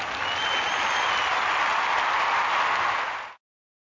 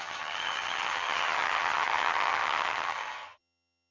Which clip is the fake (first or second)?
second